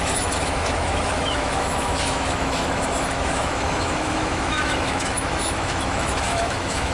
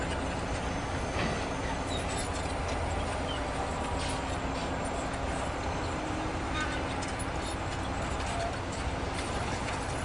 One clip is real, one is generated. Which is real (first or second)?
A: second